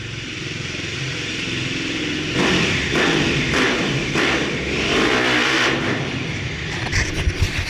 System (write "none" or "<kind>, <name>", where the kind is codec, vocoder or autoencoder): vocoder, BigVGAN v2